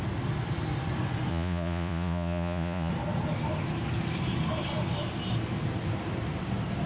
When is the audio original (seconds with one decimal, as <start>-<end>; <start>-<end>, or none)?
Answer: 0.0-1.3; 2.9-6.9